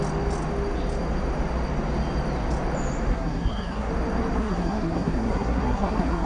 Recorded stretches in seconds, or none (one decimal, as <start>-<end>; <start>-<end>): 0.0-3.1; 3.9-4.4

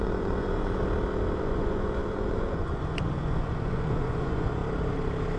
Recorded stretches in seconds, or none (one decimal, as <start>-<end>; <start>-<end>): 0.8-1.4; 4.6-5.4

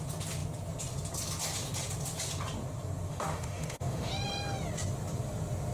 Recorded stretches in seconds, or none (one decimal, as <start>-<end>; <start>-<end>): 0.0-3.1; 4.1-5.7

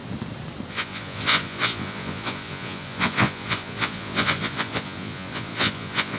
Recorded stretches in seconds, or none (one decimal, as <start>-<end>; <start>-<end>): 0.0-0.7

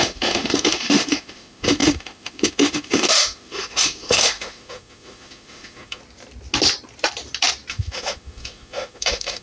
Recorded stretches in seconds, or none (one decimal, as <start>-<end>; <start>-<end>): 6.0-7.7

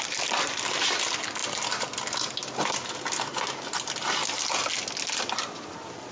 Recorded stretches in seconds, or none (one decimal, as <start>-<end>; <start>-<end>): 0.0-6.1

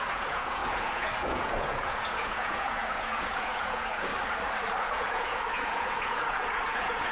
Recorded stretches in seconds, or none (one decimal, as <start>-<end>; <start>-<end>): 4.1-4.8